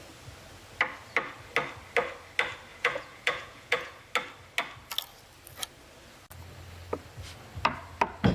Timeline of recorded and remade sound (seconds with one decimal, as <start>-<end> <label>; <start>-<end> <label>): 0.0-2.7 recorded; 2.7-4.0 remade; 4.0-8.3 recorded